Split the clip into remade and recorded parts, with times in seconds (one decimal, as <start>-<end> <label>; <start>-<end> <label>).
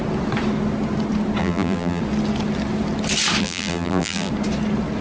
0.0-1.4 recorded; 1.4-2.0 remade; 2.0-3.4 recorded; 3.4-4.3 remade; 4.3-5.0 recorded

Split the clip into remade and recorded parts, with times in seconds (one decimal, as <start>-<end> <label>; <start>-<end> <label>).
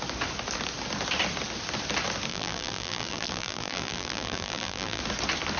0.0-2.3 recorded; 2.3-5.0 remade; 5.0-5.6 recorded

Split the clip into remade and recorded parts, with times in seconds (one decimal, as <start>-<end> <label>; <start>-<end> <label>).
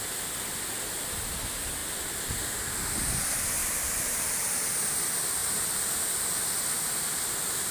0.0-3.6 recorded; 3.6-4.4 remade; 4.4-7.7 recorded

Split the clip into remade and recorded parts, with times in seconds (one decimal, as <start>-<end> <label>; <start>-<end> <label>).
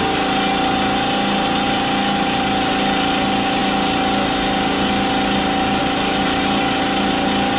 0.0-7.6 recorded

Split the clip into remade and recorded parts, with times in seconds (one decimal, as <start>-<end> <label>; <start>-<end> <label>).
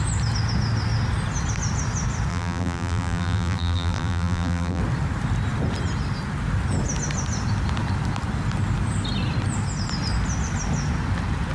0.0-2.3 recorded; 2.3-4.8 remade; 4.8-11.5 recorded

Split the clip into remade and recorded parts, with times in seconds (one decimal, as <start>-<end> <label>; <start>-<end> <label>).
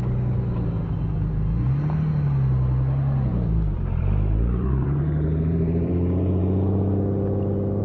0.0-3.3 recorded; 3.3-5.9 remade; 5.9-7.8 recorded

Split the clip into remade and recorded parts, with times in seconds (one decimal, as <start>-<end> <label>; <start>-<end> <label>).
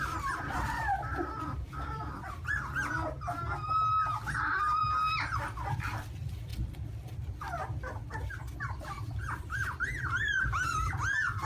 0.0-2.4 remade; 2.4-4.5 recorded; 4.5-11.4 remade